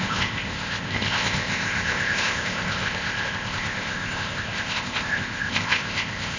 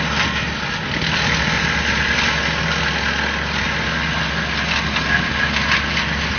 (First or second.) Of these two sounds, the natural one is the second